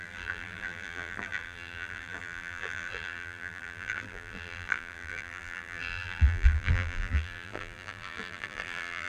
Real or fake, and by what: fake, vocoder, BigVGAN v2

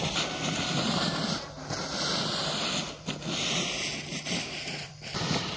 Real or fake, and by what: fake, vocoder, BigVGAN v2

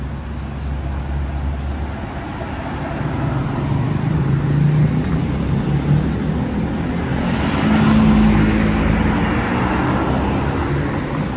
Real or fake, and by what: real